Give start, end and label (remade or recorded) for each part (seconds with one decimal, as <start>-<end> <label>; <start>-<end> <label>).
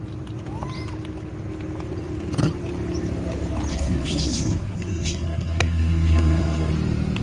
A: 0.0-3.7 recorded; 3.7-6.7 remade; 6.7-7.2 recorded